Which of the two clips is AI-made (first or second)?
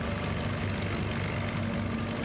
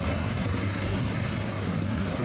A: second